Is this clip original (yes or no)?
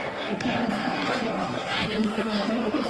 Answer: no